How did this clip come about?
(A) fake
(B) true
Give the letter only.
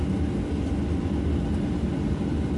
B